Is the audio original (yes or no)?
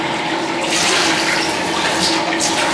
yes